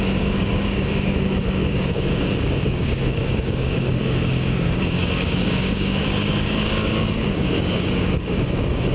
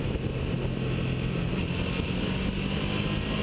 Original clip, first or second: second